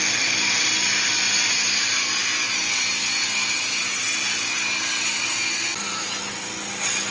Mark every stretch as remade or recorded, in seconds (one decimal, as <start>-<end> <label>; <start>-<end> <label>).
0.0-7.1 recorded

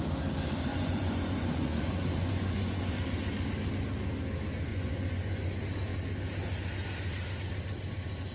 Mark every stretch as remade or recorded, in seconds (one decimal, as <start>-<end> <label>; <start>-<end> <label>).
0.0-0.7 recorded; 0.7-2.9 remade; 2.9-4.7 recorded; 4.7-5.5 remade; 5.5-8.3 recorded

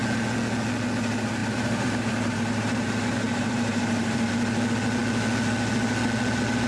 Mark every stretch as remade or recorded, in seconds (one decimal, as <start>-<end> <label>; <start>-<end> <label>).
0.0-1.4 recorded; 1.4-4.3 remade; 4.3-6.7 recorded

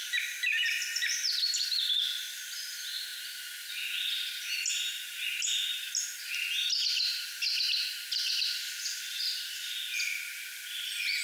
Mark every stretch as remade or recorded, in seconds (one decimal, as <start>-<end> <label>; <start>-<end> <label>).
0.0-11.2 recorded

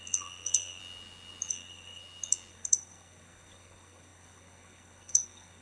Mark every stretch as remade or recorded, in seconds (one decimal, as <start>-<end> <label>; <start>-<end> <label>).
0.0-0.8 remade; 0.8-1.5 recorded; 1.5-2.0 remade; 2.0-2.5 recorded; 2.5-5.6 remade

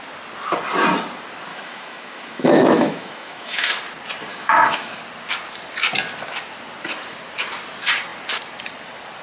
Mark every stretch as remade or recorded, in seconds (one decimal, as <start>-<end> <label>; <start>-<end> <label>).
0.0-1.5 recorded; 1.5-3.7 remade; 3.7-4.3 recorded; 4.3-5.0 remade; 5.0-9.2 recorded

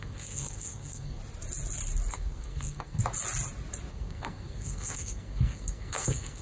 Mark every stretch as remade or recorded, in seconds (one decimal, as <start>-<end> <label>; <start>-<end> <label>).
0.0-1.2 remade; 1.2-2.1 recorded; 2.1-3.0 remade; 3.0-3.9 recorded; 3.9-6.4 remade